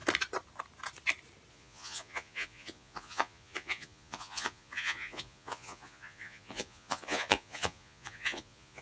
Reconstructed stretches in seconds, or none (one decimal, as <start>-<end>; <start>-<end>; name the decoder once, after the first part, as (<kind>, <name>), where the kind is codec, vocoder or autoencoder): 1.5-8.8 (vocoder, Vocos)